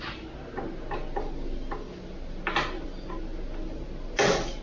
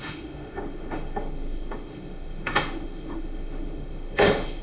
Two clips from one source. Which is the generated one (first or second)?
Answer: second